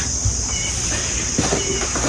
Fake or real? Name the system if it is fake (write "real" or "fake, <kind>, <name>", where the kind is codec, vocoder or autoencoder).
real